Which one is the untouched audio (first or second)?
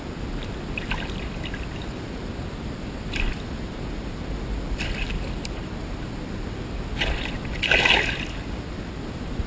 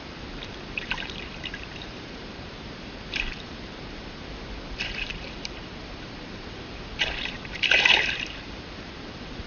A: first